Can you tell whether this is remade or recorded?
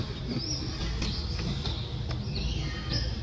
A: recorded